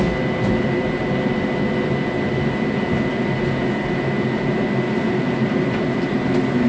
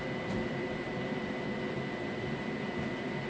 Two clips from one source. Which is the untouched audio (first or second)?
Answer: first